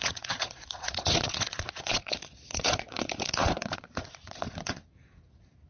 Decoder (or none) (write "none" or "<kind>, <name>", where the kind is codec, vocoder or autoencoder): vocoder, Vocos